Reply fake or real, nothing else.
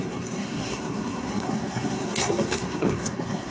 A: fake